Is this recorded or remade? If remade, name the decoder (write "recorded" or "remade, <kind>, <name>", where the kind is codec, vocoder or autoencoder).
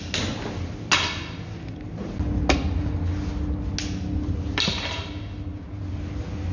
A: recorded